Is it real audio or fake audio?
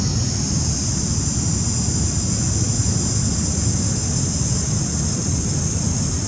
fake